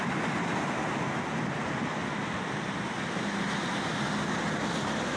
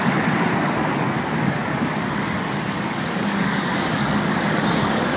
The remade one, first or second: second